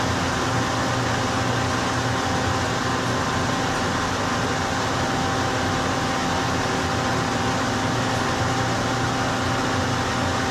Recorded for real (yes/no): yes